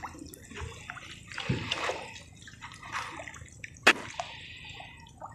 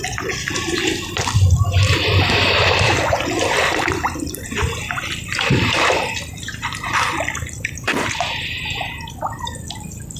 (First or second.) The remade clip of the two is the second